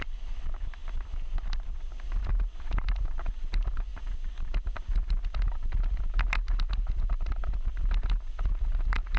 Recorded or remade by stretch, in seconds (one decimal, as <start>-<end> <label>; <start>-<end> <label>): 0.0-9.2 recorded